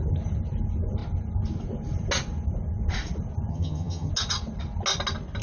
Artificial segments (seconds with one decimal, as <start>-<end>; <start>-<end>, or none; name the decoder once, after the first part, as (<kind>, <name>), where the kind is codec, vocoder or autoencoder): 3.5-4.1 (vocoder, HiFi-GAN)